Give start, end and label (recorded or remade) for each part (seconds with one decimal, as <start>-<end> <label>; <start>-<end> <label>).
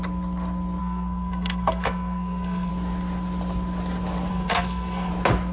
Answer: 0.0-0.8 recorded; 0.8-2.7 remade; 2.7-4.3 recorded; 4.3-5.1 remade; 5.1-5.5 recorded